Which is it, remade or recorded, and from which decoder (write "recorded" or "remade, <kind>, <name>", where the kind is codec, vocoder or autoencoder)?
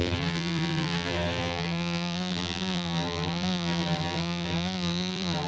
remade, vocoder, BigVGAN v2